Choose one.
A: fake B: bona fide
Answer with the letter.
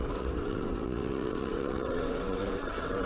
A